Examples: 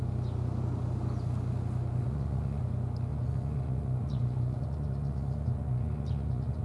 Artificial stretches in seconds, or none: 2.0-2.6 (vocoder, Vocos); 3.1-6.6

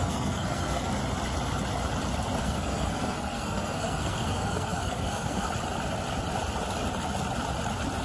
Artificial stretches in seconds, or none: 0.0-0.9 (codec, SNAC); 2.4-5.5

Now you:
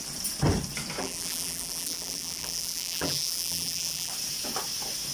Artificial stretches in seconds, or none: 1.0-4.1 (vocoder, BigVGAN v2)

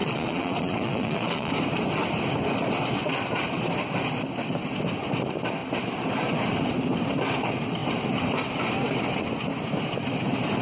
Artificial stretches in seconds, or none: 0.0-1.5 (vocoder, Vocos)

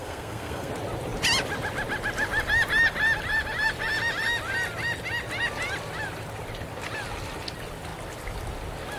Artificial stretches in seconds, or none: 0.0-0.7 (codec, SNAC)

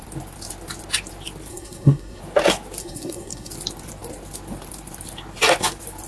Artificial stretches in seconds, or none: 1.5-2.2 (codec, SNAC); 2.8-3.5

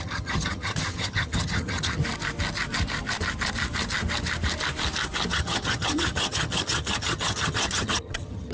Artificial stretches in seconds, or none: 0.0-2.0 (vocoder, HiFi-GAN); 5.3-8.5